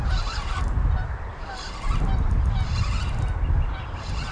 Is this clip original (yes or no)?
yes